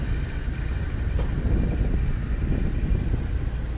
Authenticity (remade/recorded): recorded